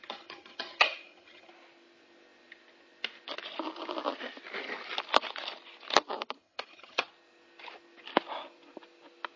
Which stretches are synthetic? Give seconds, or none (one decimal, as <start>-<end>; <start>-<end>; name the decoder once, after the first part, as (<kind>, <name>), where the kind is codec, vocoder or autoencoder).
0.0-1.5 (vocoder, HiFi-GAN); 6.4-7.1